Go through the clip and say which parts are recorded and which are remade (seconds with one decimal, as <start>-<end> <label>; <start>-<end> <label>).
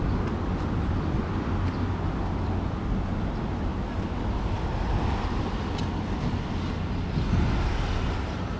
0.0-8.6 recorded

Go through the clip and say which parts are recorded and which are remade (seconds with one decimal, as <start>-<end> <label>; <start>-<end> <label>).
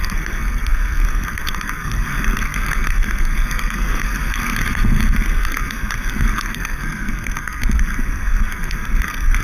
0.0-9.4 remade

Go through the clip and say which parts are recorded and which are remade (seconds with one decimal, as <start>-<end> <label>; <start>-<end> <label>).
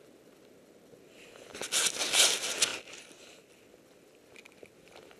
0.0-5.2 recorded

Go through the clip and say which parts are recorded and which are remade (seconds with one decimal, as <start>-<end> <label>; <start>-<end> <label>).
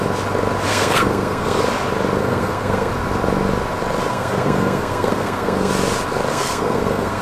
0.0-0.7 recorded; 0.7-1.6 remade; 1.6-2.2 recorded; 2.2-2.9 remade; 2.9-4.1 recorded; 4.1-5.7 remade; 5.7-6.3 recorded; 6.3-7.2 remade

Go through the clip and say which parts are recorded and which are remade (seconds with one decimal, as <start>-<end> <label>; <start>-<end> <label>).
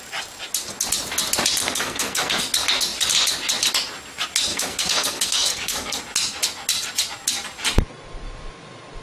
0.0-1.6 recorded; 1.6-2.4 remade; 2.4-4.5 recorded; 4.5-6.0 remade; 6.0-9.0 recorded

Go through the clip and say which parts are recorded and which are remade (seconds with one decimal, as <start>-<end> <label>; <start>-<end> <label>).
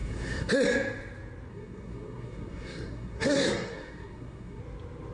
0.0-0.5 remade; 0.5-1.5 recorded; 1.5-4.6 remade; 4.6-5.1 recorded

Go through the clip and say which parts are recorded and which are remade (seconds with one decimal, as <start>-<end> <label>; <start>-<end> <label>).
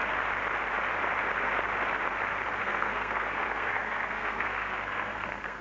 0.0-2.6 recorded; 2.6-5.6 remade